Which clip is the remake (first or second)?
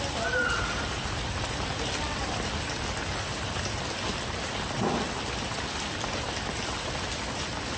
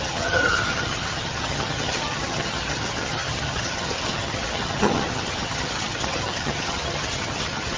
second